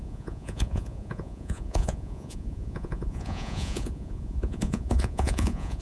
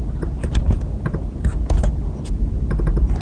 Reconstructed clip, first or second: first